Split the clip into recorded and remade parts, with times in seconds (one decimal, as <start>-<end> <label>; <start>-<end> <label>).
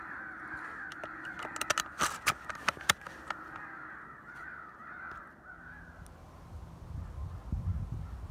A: 0.0-8.3 recorded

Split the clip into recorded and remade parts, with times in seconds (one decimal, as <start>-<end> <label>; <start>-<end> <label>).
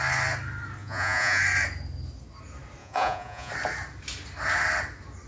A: 0.0-0.8 recorded; 0.8-1.4 remade; 1.4-2.8 recorded; 2.8-3.5 remade; 3.5-5.3 recorded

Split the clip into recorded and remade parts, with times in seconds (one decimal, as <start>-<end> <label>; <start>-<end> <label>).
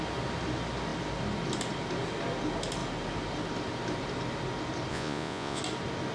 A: 0.0-4.9 recorded; 4.9-5.6 remade; 5.6-6.1 recorded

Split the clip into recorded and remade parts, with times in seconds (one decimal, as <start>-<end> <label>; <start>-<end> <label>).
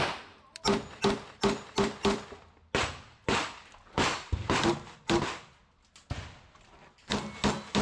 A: 0.0-7.8 recorded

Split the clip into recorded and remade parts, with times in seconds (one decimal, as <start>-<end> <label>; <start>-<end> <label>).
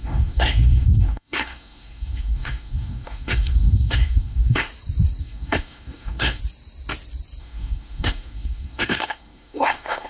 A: 0.0-4.7 remade; 4.7-5.2 recorded; 5.2-6.4 remade; 6.4-7.4 recorded; 7.4-10.1 remade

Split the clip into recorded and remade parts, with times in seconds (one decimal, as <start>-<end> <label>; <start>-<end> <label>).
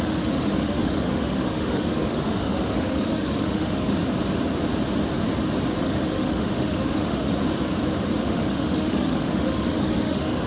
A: 0.0-4.0 remade; 4.0-5.8 recorded; 5.8-7.3 remade; 7.3-8.2 recorded; 8.2-10.5 remade